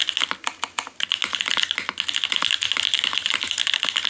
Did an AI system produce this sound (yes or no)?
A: no